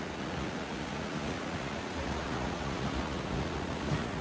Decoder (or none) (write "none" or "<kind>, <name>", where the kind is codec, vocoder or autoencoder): vocoder, Vocos